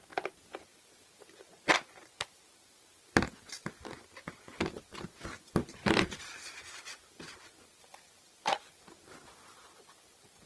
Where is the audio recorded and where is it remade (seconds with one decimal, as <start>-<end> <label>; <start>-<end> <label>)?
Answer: 0.0-5.6 recorded; 5.6-6.7 remade; 6.7-10.5 recorded